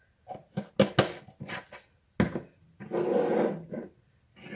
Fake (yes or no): no